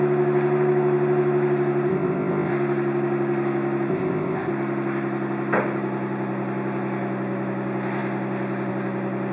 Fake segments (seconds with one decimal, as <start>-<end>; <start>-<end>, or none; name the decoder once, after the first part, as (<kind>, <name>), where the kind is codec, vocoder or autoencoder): 1.9-2.5 (codec, ZipCodec); 3.9-4.5